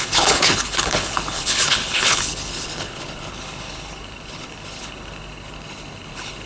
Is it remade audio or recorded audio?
remade